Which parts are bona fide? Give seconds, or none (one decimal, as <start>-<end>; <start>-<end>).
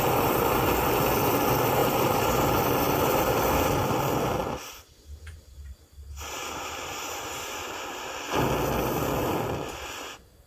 0.0-1.8; 2.3-6.4; 7.6-10.5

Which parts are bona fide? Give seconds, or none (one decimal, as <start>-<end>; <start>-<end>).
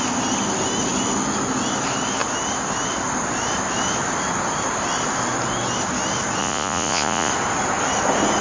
0.0-6.4; 7.3-8.4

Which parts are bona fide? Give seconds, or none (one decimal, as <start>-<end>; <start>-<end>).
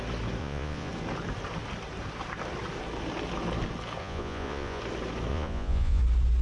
0.0-0.4; 0.9-4.0; 4.8-5.3; 6.0-6.4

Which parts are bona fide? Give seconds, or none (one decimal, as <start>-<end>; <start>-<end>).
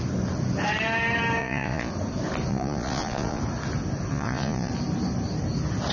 0.0-1.4; 1.9-2.5; 3.4-4.1; 4.7-5.9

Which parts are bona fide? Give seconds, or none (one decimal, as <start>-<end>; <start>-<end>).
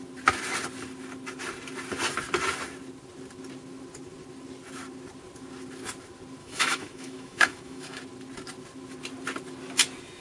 0.0-6.4; 8.0-10.2